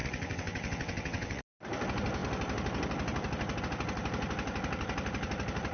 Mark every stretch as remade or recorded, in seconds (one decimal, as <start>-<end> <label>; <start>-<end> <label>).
0.0-1.4 remade; 1.4-5.7 recorded